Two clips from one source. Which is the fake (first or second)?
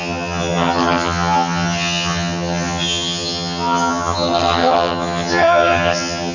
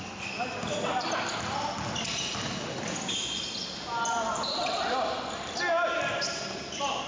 first